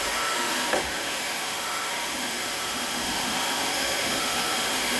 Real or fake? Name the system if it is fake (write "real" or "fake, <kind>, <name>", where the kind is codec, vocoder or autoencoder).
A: fake, autoencoder, DAC-VAE